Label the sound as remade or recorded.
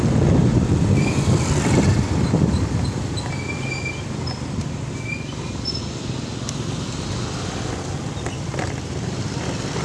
recorded